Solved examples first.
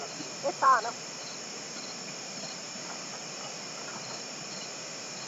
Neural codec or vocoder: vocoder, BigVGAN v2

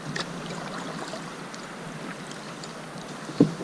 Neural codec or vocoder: none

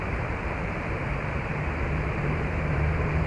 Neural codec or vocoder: vocoder, BigVGAN v2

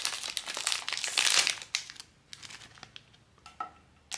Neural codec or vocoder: none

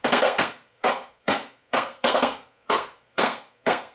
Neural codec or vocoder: codec, SNAC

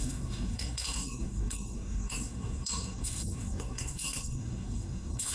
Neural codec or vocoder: codec, SNAC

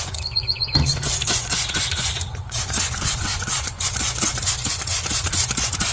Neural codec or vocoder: vocoder, Vocos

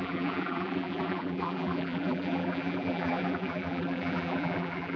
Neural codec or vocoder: vocoder, BigVGAN v2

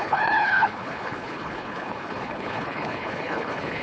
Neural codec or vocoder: codec, HILCodec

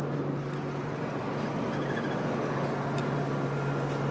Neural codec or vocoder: none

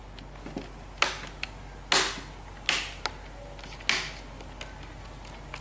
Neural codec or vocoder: none